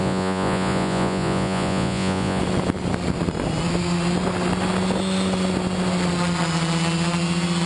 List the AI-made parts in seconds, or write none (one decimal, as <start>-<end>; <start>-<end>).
0.0-2.4